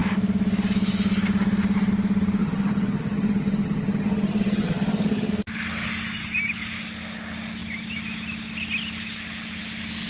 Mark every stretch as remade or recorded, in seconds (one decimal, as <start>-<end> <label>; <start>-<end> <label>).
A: 0.0-2.4 recorded; 2.4-5.3 remade; 5.3-10.1 recorded